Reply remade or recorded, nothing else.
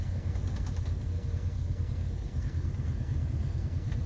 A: remade